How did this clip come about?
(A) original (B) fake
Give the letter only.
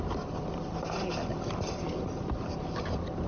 A